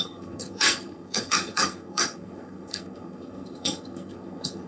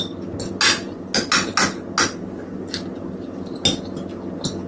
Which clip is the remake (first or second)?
first